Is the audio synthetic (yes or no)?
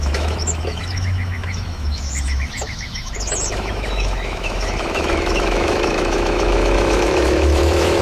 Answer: yes